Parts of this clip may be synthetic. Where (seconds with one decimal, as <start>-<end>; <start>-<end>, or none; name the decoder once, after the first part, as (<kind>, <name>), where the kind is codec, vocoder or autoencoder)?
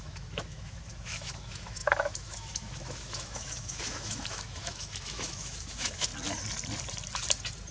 0.0-6.1 (autoencoder, DAC-VAE)